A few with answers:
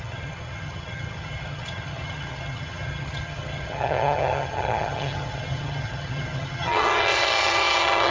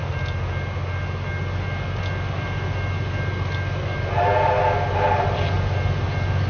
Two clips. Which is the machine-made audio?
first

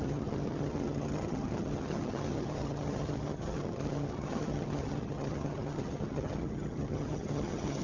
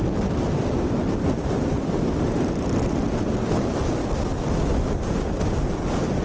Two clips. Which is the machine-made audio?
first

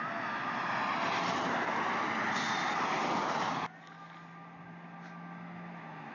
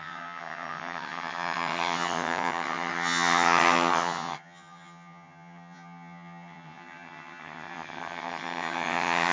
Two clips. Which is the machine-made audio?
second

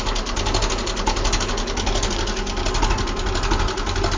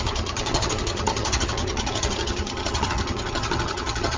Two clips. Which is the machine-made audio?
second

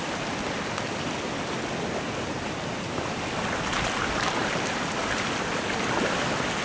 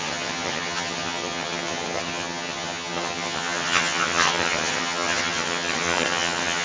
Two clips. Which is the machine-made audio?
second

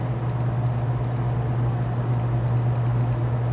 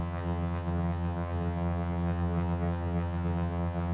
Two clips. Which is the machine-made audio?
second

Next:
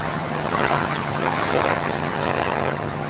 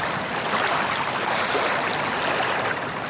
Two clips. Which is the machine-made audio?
first